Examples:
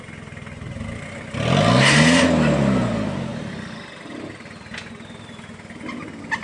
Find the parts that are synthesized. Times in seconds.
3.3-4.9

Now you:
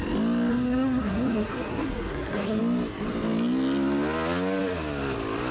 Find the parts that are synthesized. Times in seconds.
0.5-2.6

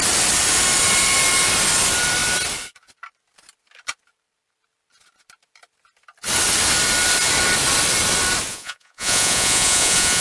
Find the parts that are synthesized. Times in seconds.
8.5-10.2